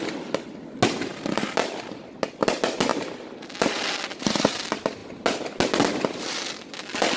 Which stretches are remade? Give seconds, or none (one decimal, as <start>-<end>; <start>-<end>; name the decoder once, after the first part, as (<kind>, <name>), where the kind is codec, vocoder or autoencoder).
none